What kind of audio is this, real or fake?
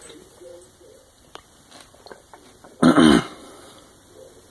real